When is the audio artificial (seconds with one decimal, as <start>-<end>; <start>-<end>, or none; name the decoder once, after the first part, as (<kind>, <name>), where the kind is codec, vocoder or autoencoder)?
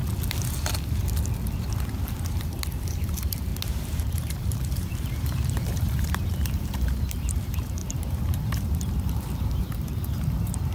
2.4-3.5 (vocoder, BigVGAN v2); 4.1-10.7